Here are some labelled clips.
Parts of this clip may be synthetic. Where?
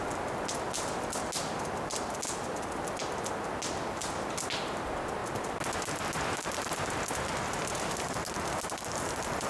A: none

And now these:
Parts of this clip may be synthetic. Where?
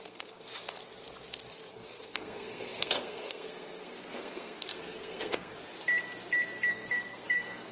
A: 0.0-0.5; 1.7-5.5; 6.7-7.7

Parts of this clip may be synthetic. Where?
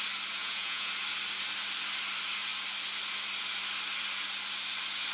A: 0.4-0.9